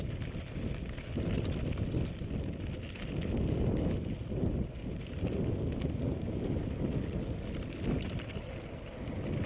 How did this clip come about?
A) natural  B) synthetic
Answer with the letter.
A